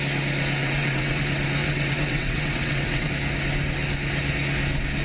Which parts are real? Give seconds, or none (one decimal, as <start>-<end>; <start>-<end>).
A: 0.0-0.6; 1.2-1.6; 3.1-5.0